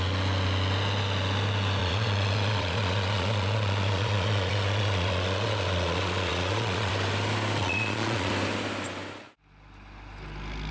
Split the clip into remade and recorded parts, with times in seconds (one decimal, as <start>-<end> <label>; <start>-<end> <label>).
0.0-1.8 recorded; 1.8-6.9 remade; 6.9-7.6 recorded; 7.6-8.3 remade; 8.3-10.7 recorded